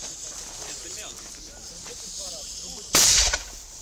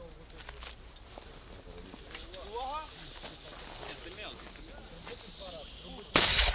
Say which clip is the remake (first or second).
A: first